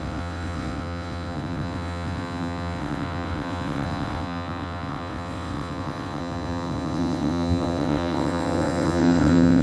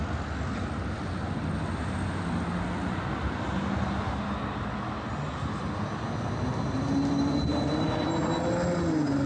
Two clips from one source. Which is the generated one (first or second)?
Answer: first